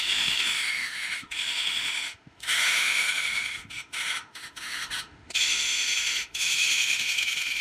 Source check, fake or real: fake